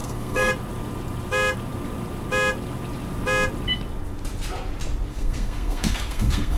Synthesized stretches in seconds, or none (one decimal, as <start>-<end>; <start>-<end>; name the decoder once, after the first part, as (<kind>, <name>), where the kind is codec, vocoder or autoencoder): 0.0-0.5 (codec, SNAC); 5.1-6.6

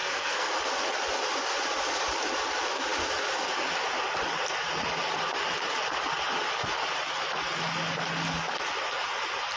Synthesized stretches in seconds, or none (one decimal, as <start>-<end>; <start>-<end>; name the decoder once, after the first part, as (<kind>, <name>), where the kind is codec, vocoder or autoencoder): 0.0-0.5 (codec, SNAC)

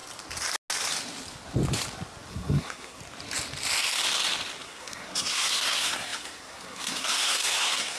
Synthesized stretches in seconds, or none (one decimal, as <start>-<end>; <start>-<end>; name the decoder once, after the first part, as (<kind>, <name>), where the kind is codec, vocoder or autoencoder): 2.3-3.0 (codec, SNAC); 4.6-8.0

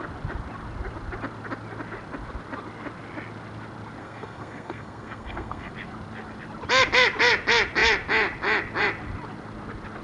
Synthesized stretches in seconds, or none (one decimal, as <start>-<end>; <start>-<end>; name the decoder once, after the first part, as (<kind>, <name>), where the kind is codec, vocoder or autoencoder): 4.0-5.7 (codec, SNAC)

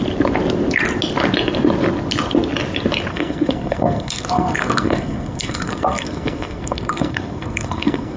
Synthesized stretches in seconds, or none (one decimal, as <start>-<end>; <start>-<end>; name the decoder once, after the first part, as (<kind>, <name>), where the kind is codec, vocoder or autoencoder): 3.1-8.2 (codec, SNAC)